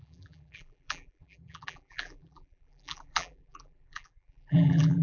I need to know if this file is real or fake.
fake